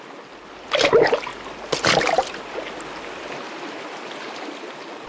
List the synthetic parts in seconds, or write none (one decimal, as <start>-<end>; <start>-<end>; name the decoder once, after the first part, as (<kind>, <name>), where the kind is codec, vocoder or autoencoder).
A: none